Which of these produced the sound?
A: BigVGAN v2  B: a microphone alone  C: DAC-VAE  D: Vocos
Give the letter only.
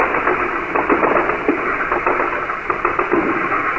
B